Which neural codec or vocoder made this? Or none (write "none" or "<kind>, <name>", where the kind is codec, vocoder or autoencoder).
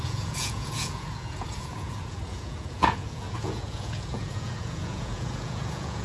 vocoder, Vocos